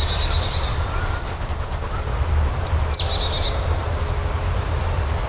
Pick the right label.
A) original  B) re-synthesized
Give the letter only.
A